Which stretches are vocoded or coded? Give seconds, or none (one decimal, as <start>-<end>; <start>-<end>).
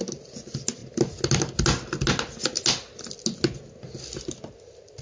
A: none